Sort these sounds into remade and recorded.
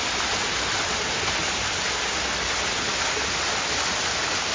recorded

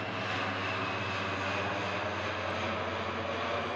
recorded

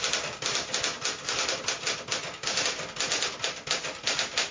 recorded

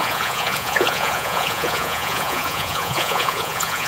remade